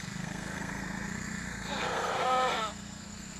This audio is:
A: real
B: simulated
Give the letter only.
B